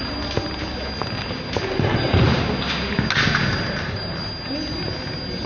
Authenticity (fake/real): real